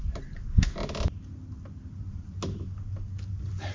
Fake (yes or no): no